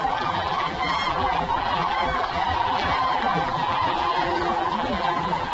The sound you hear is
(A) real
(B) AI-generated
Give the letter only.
B